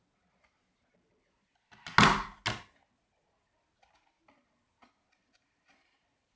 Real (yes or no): yes